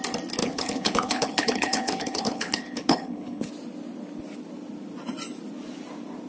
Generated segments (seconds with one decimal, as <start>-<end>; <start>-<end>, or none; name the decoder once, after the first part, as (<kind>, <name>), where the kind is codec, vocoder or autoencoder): 0.4-3.5 (codec, HILCodec)